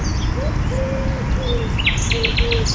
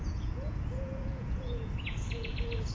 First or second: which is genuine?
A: first